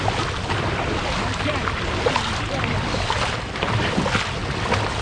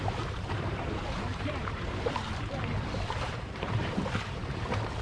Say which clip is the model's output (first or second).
second